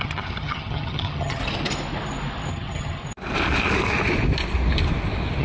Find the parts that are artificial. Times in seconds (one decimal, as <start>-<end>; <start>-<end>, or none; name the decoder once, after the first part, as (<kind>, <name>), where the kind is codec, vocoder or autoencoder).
0.0-1.4 (vocoder, HiFi-GAN); 2.5-3.0